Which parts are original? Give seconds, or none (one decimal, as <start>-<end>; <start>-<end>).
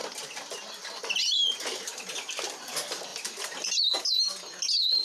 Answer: 0.0-5.0